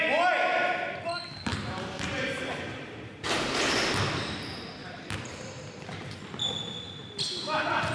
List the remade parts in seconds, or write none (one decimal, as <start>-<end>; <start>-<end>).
1.5-3.1; 4.8-6.2